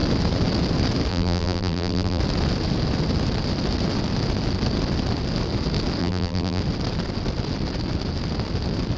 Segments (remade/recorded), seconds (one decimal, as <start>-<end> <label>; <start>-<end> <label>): 0.0-1.1 recorded; 1.1-2.2 remade; 2.2-6.0 recorded; 6.0-6.6 remade; 6.6-9.0 recorded

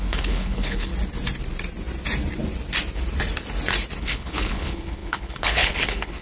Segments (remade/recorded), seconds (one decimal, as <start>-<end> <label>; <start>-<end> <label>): 0.0-0.9 remade; 0.9-4.0 recorded; 4.0-6.2 remade

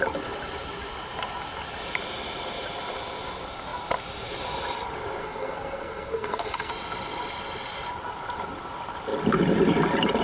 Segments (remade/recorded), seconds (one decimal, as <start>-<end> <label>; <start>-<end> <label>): 0.0-5.2 recorded; 5.2-6.7 remade; 6.7-10.2 recorded

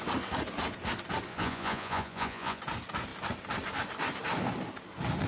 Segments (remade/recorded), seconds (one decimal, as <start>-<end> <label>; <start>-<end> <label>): 0.0-1.3 recorded; 1.3-2.6 remade; 2.6-5.3 recorded

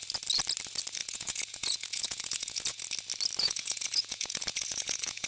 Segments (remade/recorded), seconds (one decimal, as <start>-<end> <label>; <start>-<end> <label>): 0.0-1.0 recorded; 1.0-2.8 remade; 2.8-3.4 recorded; 3.4-5.3 remade

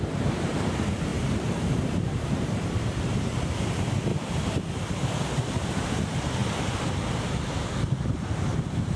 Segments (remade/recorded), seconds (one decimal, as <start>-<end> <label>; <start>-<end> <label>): 0.0-1.1 remade; 1.1-1.8 recorded; 1.8-4.1 remade; 4.1-5.6 recorded; 5.6-9.0 remade

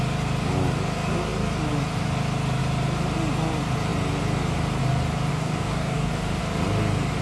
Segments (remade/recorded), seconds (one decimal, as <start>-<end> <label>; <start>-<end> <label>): 0.0-5.3 recorded; 5.3-6.4 remade; 6.4-7.2 recorded

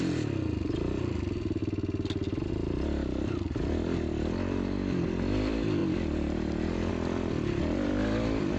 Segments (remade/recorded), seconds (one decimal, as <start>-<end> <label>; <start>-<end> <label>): 0.0-1.6 remade; 1.6-2.5 recorded; 2.5-5.8 remade; 5.8-6.9 recorded; 6.9-8.6 remade